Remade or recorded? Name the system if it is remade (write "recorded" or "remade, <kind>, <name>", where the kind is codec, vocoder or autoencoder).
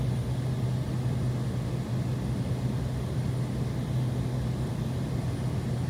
recorded